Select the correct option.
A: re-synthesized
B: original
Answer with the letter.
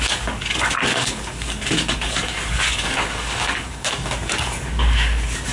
A